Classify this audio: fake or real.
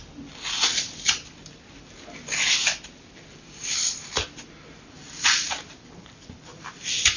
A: real